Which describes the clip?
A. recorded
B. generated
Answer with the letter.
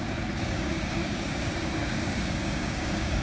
B